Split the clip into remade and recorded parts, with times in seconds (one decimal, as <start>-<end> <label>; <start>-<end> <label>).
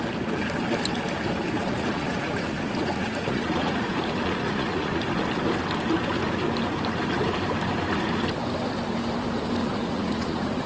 0.0-1.6 recorded; 1.6-5.0 remade; 5.0-9.6 recorded; 9.6-10.7 remade